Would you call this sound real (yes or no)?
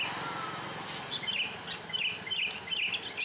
yes